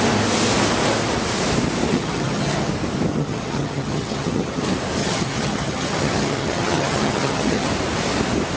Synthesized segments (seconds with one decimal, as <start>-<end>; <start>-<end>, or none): 1.9-2.7; 3.1-4.6; 5.0-7.7